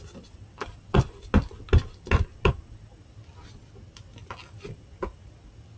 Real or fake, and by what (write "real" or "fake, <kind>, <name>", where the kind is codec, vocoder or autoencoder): real